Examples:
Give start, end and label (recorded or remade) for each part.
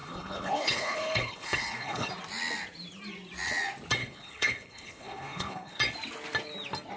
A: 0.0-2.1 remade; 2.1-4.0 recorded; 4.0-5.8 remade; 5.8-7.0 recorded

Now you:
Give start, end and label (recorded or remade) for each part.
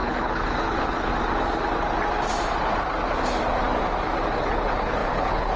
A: 0.0-1.1 remade; 1.1-4.4 recorded; 4.4-5.6 remade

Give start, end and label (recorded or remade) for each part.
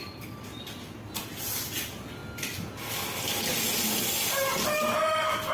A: 0.0-5.5 recorded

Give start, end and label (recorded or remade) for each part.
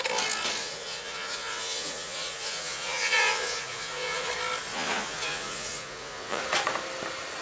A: 0.0-0.6 recorded; 0.6-4.3 remade; 4.3-4.7 recorded; 4.7-6.4 remade; 6.4-7.4 recorded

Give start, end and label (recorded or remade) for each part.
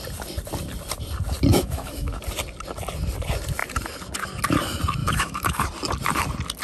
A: 0.0-1.5 recorded; 1.5-2.2 remade; 2.2-5.0 recorded; 5.0-5.6 remade; 5.6-6.6 recorded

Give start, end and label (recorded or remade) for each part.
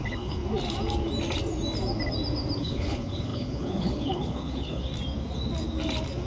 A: 0.0-0.4 remade; 0.4-2.6 recorded; 2.6-4.8 remade; 4.8-6.3 recorded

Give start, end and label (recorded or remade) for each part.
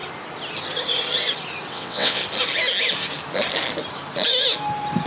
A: 0.0-1.7 recorded; 1.7-2.2 remade; 2.2-5.1 recorded